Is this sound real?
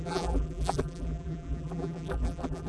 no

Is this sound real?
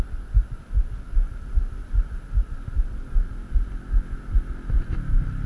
yes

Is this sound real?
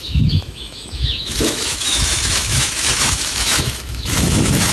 no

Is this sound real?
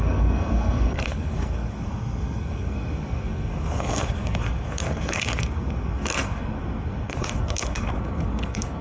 no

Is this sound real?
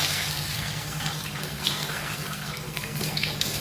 no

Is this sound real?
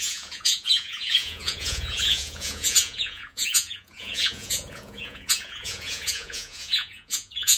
no